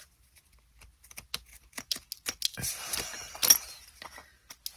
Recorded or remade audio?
recorded